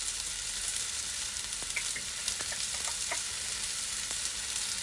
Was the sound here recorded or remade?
recorded